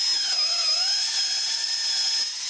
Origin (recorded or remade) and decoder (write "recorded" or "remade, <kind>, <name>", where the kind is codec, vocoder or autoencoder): recorded